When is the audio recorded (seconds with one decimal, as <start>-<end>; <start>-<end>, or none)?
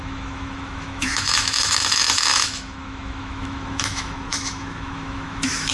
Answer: none